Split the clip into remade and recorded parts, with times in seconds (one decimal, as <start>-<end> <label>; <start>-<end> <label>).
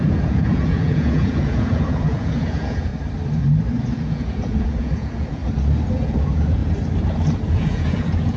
0.0-2.9 remade; 2.9-3.8 recorded; 3.8-5.4 remade; 5.4-5.9 recorded; 5.9-6.6 remade; 6.6-7.5 recorded; 7.5-8.4 remade